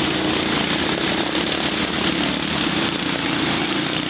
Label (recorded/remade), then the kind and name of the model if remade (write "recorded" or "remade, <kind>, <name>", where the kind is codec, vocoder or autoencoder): recorded